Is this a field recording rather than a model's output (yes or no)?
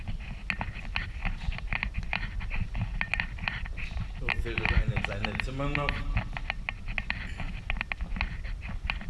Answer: yes